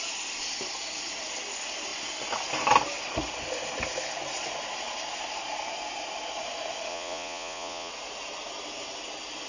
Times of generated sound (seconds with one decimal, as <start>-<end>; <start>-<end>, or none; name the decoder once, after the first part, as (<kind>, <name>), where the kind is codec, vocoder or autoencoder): 6.9-7.9 (vocoder, Vocos)